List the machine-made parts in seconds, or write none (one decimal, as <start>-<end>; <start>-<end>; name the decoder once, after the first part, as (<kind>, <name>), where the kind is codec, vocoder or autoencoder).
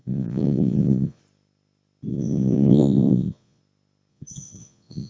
0.0-1.2 (vocoder, Vocos); 2.1-3.6; 4.1-5.1